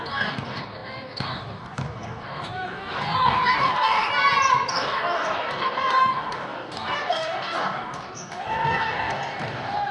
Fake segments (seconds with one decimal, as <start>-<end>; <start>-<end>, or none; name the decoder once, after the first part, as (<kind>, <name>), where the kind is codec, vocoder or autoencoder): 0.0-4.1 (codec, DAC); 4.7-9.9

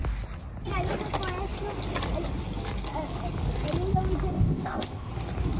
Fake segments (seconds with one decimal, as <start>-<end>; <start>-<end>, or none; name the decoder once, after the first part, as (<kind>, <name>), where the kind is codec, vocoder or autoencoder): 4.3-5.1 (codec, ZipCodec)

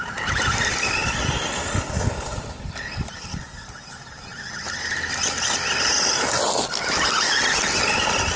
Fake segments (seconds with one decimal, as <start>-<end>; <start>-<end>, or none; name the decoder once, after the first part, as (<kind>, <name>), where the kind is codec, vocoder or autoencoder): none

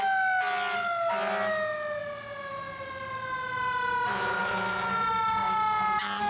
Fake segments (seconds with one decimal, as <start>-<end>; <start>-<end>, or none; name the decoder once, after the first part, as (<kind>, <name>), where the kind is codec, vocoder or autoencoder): none

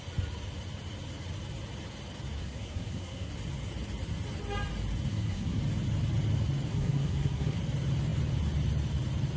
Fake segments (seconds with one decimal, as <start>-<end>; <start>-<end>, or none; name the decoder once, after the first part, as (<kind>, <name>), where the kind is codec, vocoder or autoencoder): 2.4-3.3 (codec, SNAC); 5.1-5.6; 6.7-7.6

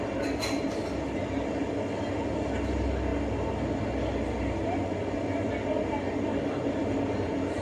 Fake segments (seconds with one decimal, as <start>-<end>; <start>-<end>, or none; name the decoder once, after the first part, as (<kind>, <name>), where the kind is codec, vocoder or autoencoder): none

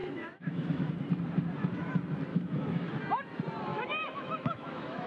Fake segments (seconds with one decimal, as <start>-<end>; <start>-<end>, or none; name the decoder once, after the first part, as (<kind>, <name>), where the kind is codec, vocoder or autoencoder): 0.0-0.9 (autoencoder, DAC-VAE); 2.3-2.9; 3.7-5.1